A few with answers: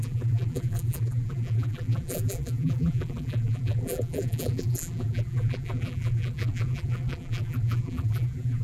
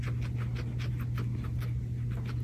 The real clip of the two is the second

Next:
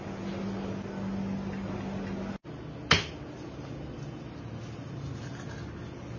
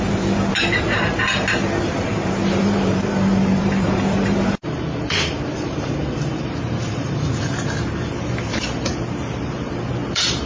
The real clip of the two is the first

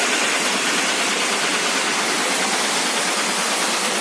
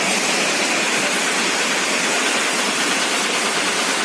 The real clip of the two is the second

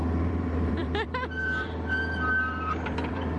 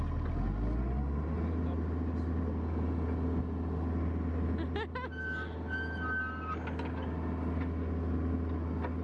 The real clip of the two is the second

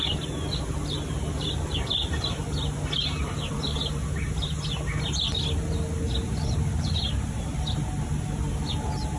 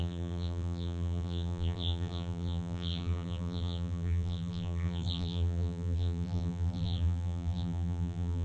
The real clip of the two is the first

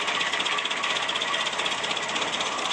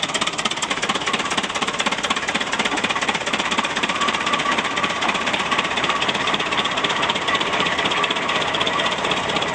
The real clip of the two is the first